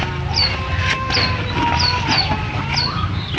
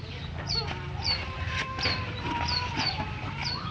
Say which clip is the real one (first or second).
first